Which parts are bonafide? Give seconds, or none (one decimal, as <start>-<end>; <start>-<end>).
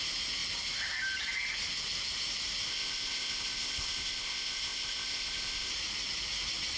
0.0-2.7; 5.7-6.8